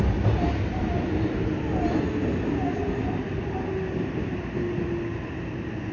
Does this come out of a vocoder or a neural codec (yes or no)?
no